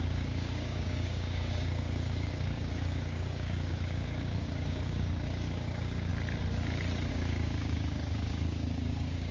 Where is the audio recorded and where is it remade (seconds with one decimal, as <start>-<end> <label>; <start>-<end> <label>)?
0.0-6.1 remade; 6.1-7.1 recorded; 7.1-9.3 remade